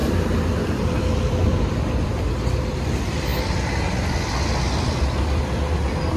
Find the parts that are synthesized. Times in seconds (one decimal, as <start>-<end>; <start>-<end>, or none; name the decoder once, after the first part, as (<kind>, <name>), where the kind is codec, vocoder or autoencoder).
0.0-2.3 (vocoder, BigVGAN v2)